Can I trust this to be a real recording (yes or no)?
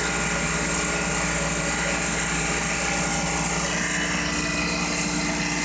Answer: yes